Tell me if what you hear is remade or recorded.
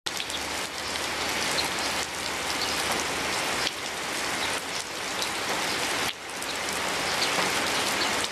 recorded